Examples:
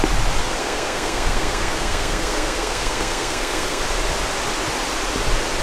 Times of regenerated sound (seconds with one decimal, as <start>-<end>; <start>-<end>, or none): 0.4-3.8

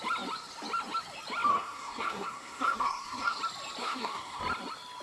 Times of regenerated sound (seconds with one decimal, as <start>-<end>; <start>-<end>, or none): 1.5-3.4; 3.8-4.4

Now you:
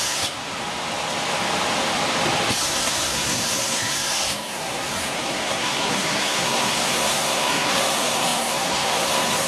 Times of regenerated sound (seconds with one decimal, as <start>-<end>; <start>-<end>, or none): 0.0-0.4; 2.6-9.5